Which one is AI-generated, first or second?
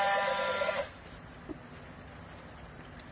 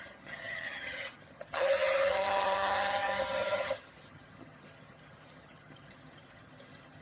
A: second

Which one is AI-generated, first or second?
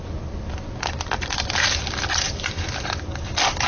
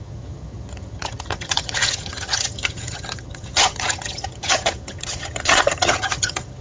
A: second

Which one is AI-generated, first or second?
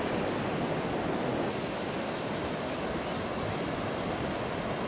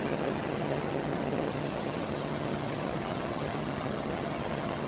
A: second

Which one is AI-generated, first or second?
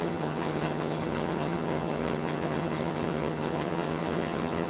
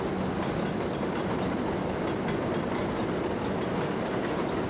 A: first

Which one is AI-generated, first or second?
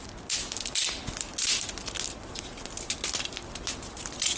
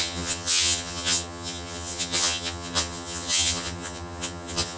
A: second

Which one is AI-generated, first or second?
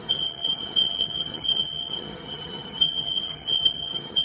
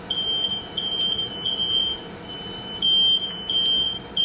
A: first